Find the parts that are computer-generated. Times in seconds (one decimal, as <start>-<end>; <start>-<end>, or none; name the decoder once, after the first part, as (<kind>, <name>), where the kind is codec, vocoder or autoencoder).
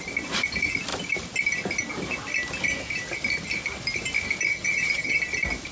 4.5-5.2 (vocoder, HiFi-GAN)